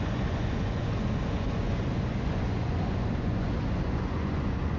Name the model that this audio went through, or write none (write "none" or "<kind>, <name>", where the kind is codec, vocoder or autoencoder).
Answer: vocoder, Vocos